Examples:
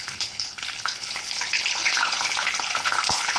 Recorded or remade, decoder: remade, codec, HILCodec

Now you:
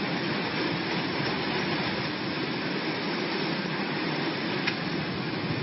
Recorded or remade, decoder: recorded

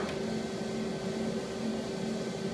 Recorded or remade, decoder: recorded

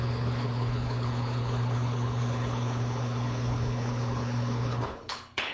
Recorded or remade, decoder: remade, codec, HILCodec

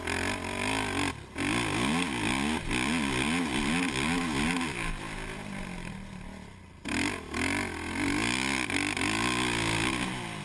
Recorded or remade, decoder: recorded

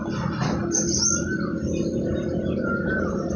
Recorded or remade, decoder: recorded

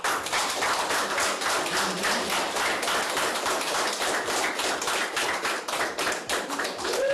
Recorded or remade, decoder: recorded